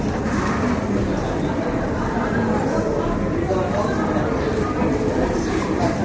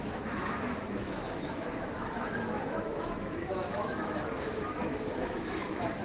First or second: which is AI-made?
second